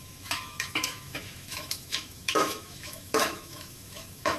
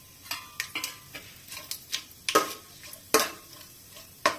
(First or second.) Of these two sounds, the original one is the second